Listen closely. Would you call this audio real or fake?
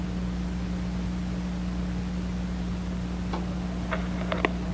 real